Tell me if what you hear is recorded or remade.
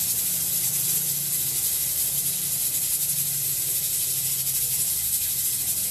recorded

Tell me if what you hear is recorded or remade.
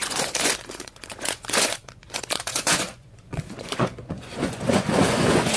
remade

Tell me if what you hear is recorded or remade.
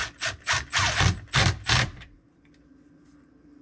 recorded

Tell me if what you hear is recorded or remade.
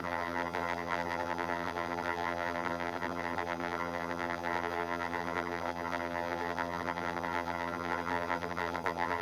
remade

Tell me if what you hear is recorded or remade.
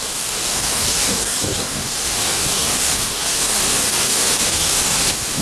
remade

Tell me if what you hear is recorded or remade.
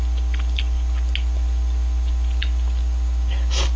recorded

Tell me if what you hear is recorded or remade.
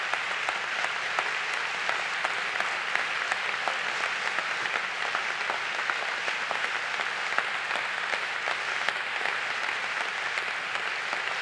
recorded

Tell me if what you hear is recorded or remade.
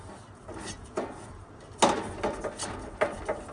recorded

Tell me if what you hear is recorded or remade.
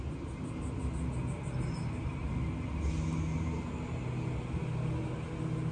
recorded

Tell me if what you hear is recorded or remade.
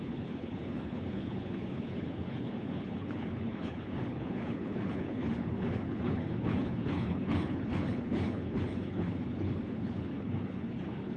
remade